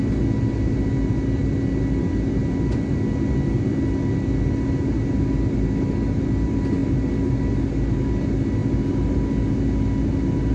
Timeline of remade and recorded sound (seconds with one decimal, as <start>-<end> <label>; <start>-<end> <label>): 0.0-10.5 recorded